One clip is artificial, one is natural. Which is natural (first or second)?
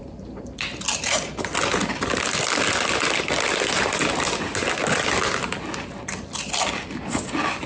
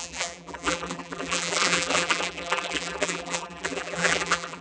first